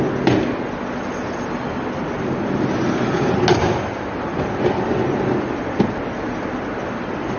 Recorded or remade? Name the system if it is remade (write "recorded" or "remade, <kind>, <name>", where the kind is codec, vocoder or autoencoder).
recorded